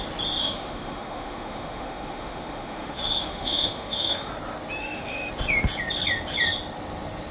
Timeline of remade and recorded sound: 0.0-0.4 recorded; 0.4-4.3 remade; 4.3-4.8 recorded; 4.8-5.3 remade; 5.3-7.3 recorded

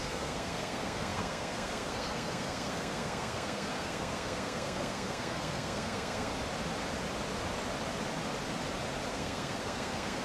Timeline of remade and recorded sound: 0.0-6.3 remade; 6.3-9.1 recorded; 9.1-10.2 remade